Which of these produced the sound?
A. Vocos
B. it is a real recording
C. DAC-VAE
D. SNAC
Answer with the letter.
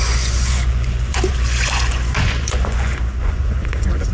A